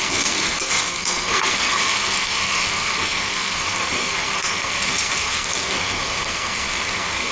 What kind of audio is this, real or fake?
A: fake